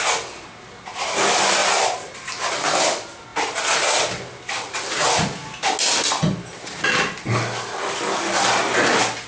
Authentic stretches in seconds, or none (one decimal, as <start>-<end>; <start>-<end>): 0.0-9.3